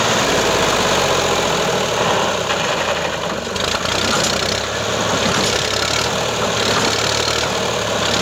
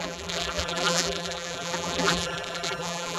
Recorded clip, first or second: first